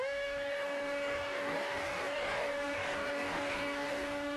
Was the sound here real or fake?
fake